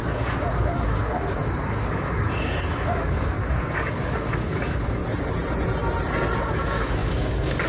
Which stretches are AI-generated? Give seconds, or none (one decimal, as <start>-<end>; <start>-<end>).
0.0-5.0; 6.4-7.7